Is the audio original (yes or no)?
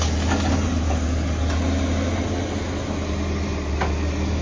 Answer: yes